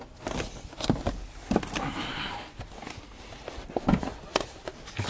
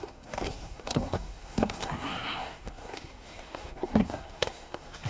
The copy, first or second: second